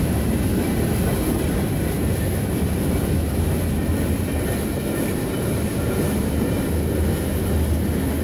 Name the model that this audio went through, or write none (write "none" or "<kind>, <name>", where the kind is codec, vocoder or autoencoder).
none